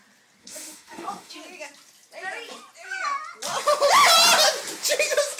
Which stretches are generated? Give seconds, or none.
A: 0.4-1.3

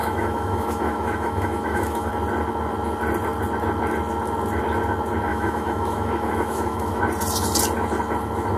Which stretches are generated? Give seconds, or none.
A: 0.0-2.1; 5.3-7.0

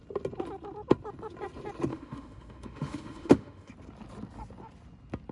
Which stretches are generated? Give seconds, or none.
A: 1.9-3.7

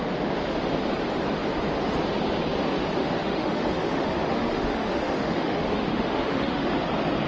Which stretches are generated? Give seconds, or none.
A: 3.0-6.7

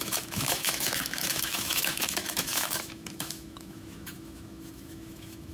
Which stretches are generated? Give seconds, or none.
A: 0.0-5.5